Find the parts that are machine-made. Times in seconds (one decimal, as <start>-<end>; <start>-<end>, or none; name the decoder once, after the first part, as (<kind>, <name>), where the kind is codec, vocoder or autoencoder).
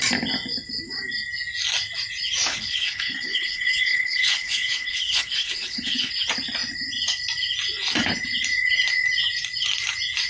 2.5-6.1 (codec, HILCodec)